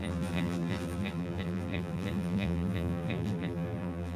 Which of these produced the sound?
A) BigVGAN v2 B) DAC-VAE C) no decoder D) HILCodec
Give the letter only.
A